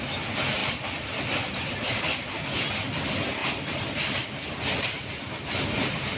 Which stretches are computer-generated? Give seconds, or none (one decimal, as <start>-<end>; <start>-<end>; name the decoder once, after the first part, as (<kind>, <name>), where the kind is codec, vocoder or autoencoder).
0.6-2.7 (vocoder, BigVGAN v2); 3.4-4.6